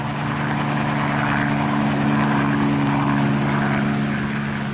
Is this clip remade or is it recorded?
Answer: recorded